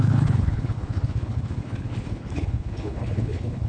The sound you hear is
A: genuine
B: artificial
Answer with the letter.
B